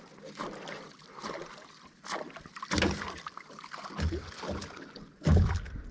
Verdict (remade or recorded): recorded